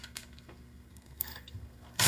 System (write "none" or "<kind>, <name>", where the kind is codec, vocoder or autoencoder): codec, SNAC